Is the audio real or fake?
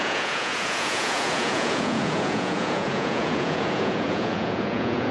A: fake